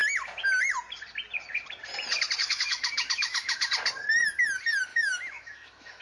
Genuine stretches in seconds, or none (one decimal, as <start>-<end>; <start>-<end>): 0.0-2.4; 3.7-4.9